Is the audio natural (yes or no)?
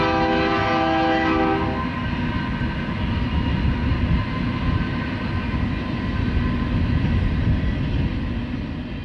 yes